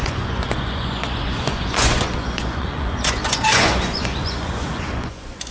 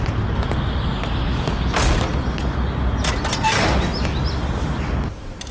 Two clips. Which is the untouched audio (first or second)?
second